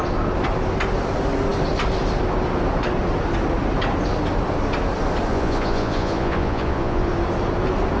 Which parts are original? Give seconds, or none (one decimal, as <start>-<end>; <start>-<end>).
0.0-5.3; 7.1-8.0